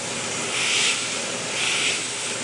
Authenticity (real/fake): fake